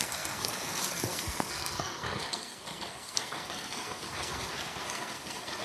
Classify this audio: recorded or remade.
remade